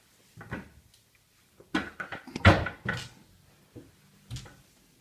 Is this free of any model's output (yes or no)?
yes